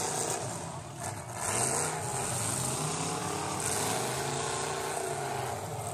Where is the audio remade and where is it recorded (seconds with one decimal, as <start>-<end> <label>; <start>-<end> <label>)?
0.0-5.9 recorded